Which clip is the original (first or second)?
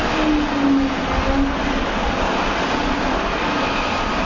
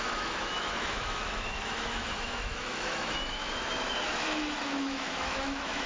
first